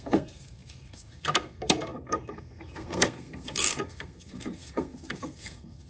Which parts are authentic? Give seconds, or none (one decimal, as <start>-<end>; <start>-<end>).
none